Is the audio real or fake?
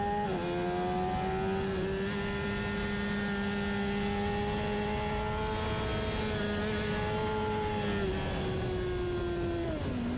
real